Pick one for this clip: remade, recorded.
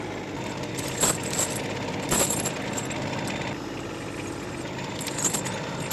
recorded